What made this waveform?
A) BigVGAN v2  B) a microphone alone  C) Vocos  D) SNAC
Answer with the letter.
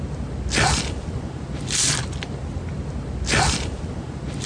B